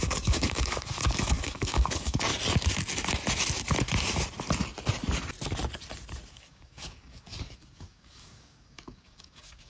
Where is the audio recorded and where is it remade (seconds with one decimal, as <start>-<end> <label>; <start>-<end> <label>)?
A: 0.0-2.3 remade; 2.3-6.3 recorded; 6.3-9.7 remade